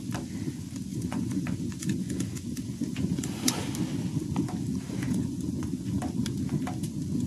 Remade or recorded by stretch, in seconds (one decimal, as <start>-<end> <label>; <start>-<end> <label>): 0.0-0.9 recorded; 0.9-3.6 remade; 3.6-4.7 recorded; 4.7-6.0 remade; 6.0-7.3 recorded